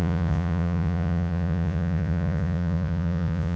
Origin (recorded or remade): remade